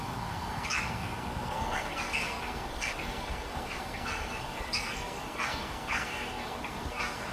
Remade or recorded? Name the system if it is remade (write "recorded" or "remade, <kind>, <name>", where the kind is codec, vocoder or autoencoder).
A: remade, codec, SNAC